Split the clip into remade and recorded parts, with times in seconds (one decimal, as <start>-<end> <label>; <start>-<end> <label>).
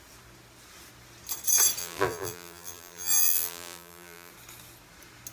0.0-1.8 recorded; 1.8-4.3 remade; 4.3-5.3 recorded